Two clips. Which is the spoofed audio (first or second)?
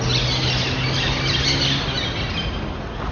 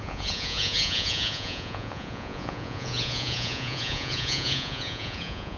second